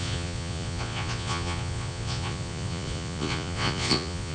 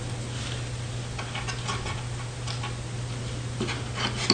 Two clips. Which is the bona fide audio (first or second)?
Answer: second